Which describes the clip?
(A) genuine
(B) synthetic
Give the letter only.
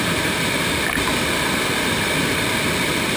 B